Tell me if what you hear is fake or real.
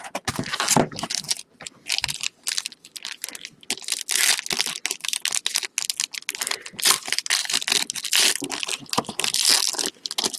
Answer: real